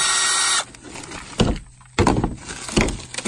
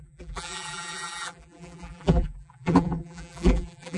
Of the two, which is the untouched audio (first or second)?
first